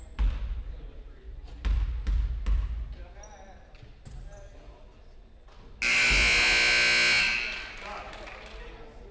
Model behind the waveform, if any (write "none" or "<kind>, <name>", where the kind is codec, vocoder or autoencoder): none